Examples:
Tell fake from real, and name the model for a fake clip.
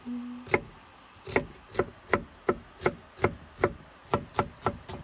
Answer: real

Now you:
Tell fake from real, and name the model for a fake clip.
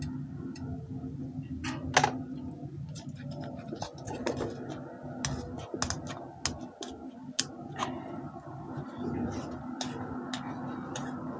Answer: real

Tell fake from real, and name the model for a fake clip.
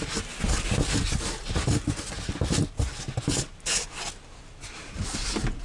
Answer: real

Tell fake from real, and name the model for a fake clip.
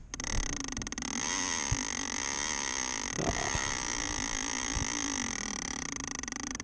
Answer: real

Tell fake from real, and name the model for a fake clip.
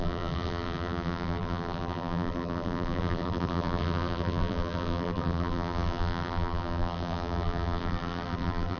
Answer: fake, vocoder, BigVGAN v2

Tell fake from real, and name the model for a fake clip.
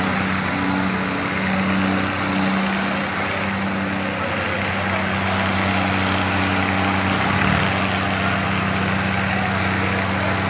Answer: real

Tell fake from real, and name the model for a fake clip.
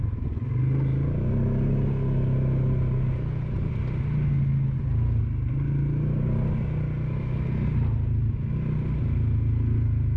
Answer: real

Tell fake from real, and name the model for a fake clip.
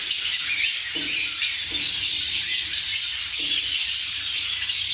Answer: real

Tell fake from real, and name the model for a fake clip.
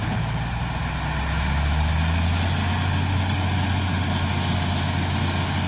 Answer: real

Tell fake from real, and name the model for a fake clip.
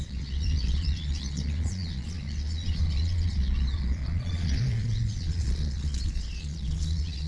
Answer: fake, vocoder, Vocos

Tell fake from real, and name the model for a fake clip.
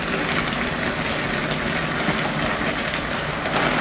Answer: real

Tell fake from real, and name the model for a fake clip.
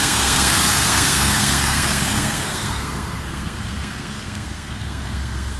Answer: fake, codec, SNAC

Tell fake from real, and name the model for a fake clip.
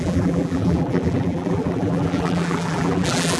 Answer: fake, vocoder, BigVGAN v2